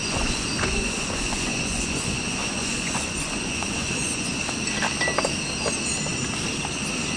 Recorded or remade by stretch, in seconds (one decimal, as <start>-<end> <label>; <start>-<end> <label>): 0.0-4.3 remade; 4.3-7.2 recorded